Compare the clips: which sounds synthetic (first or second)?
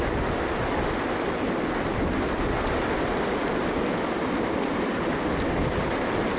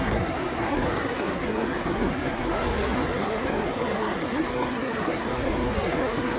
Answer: second